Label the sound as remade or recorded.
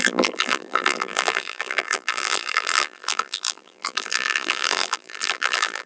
remade